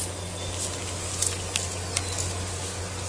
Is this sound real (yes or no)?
yes